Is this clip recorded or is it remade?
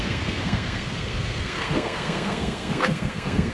remade